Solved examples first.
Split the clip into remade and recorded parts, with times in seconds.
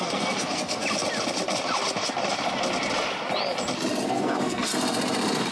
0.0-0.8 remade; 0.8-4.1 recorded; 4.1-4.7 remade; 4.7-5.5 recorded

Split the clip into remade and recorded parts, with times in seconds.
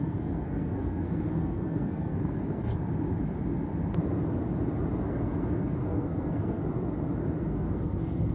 0.0-2.7 remade; 2.7-5.0 recorded; 5.0-6.6 remade; 6.6-7.3 recorded; 7.3-8.3 remade